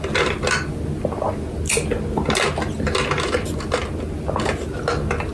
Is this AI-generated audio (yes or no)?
no